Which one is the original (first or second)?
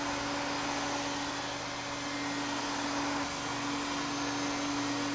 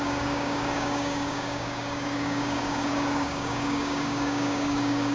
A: first